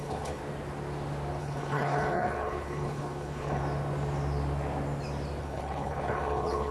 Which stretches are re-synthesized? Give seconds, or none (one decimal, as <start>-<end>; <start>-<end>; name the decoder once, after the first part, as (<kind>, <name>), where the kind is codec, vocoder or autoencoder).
0.0-0.4 (codec, HILCodec); 1.4-3.6; 5.4-6.7